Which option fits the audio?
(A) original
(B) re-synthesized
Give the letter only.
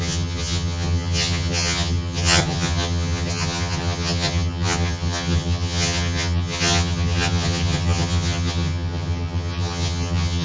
B